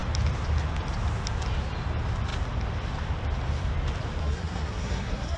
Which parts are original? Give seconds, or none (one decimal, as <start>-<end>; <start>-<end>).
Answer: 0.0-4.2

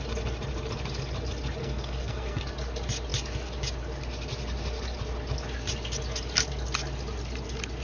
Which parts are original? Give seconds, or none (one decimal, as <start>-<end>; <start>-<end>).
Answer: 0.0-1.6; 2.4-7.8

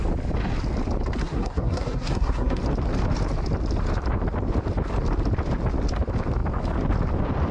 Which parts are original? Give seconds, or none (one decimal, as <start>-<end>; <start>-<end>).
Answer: 0.0-1.2; 2.6-7.5